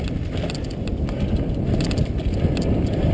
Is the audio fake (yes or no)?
no